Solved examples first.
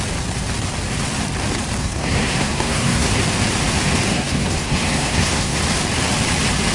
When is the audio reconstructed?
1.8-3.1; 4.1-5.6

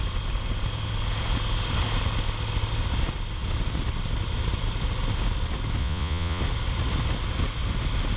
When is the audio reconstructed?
5.8-6.4

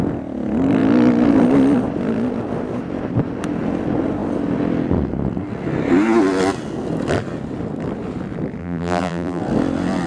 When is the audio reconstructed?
8.6-9.4

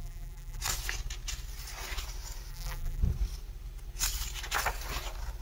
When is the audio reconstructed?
0.0-0.6; 2.5-3.0

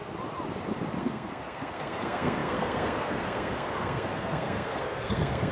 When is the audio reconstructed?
1.0-5.5

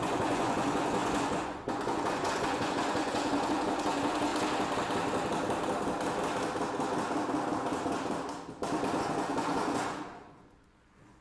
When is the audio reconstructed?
0.0-4.3; 9.0-11.2

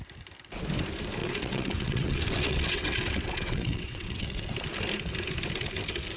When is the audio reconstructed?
1.2-4.5

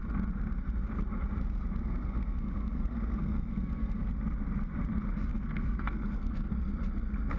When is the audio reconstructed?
1.8-4.1; 5.3-6.5